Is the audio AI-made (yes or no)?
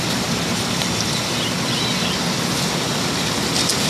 no